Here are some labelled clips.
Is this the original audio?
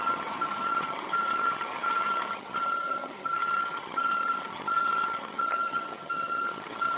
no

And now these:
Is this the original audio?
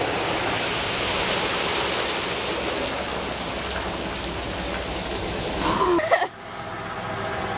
yes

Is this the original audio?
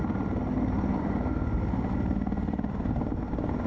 yes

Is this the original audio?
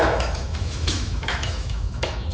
no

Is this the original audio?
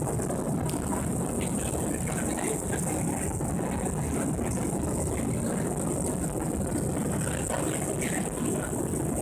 yes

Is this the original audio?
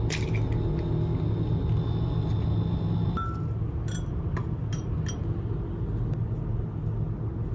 yes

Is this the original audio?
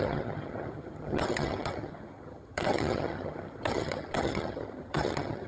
no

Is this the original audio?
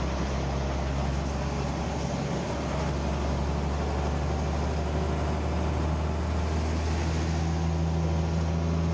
yes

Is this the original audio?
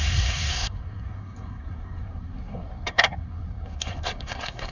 no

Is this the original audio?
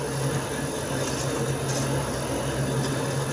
yes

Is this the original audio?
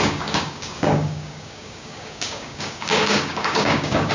no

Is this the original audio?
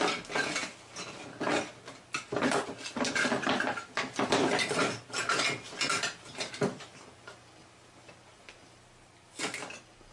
yes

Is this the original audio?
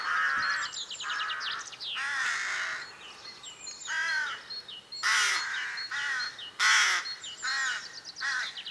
yes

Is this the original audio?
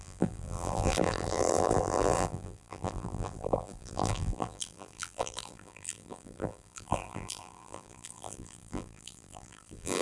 no